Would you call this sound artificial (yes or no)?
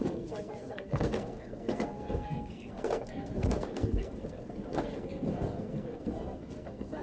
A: yes